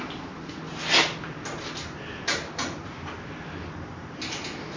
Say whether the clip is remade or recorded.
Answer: recorded